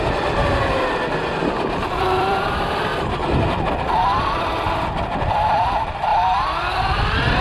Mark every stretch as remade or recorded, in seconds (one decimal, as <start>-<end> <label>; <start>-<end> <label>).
0.0-0.4 remade; 0.4-1.5 recorded; 1.5-2.9 remade; 2.9-5.3 recorded; 5.3-6.1 remade; 6.1-7.0 recorded; 7.0-7.4 remade